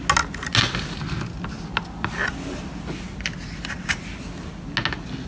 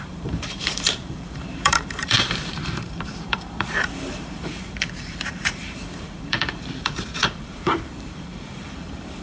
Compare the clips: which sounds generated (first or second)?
second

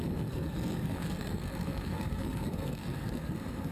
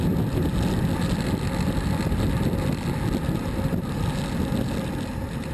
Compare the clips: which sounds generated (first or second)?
first